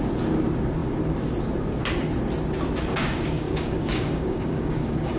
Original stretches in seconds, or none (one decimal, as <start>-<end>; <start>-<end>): 0.0-2.9